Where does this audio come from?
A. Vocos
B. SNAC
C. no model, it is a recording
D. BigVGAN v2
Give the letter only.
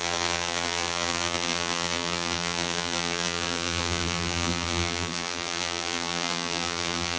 D